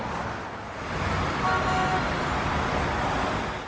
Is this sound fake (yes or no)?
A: no